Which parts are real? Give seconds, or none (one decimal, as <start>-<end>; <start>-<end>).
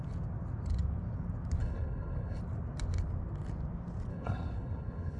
0.0-1.6; 2.4-4.1